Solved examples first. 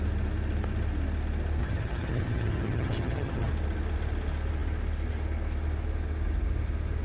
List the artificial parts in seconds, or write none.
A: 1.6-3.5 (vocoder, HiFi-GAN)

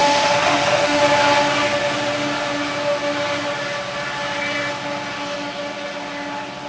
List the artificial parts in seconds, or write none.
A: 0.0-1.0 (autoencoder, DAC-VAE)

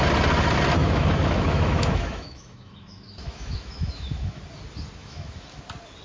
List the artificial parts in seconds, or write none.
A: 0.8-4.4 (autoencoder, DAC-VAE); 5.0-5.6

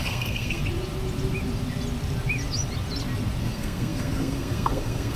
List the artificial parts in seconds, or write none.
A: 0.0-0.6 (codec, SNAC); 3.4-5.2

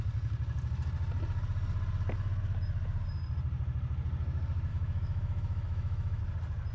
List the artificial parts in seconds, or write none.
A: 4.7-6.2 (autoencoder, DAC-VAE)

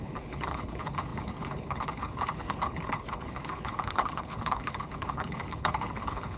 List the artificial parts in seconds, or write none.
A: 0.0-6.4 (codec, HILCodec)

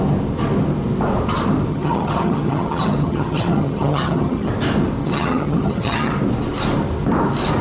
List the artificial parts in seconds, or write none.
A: 1.7-4.5 (vocoder, HiFi-GAN); 5.0-6.1